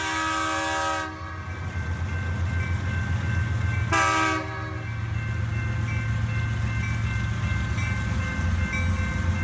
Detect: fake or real real